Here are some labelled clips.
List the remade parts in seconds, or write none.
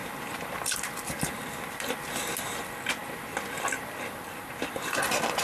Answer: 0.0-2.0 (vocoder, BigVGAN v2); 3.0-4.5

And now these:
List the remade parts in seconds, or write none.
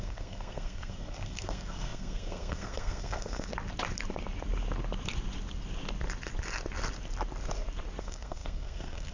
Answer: 0.0-3.5 (codec, SNAC); 8.0-9.1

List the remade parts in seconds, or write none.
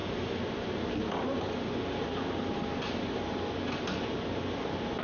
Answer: none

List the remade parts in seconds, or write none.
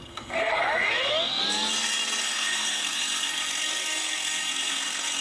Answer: 0.0-1.4 (codec, SNAC); 2.2-5.2